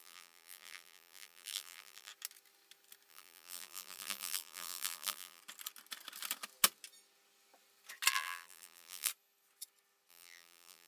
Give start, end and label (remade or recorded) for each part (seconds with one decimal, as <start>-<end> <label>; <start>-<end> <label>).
0.0-2.1 remade; 2.1-3.1 recorded; 3.1-5.4 remade; 5.4-8.1 recorded; 8.1-9.1 remade; 9.1-10.1 recorded; 10.1-10.9 remade